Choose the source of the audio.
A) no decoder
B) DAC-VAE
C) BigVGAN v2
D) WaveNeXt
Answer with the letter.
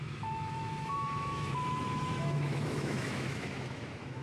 B